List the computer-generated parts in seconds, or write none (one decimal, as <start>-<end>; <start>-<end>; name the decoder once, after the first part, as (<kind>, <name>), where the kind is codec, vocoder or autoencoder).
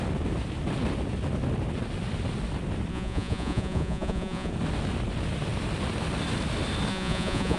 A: 2.9-4.5 (vocoder, Vocos); 6.9-7.6